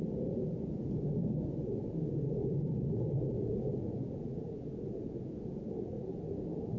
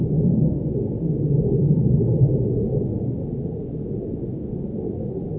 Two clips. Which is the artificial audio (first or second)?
first